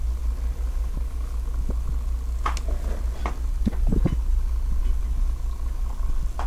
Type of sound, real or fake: real